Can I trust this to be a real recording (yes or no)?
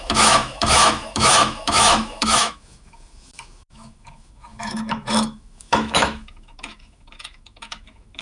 no